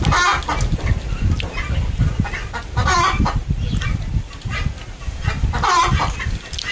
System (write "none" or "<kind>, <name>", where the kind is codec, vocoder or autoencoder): none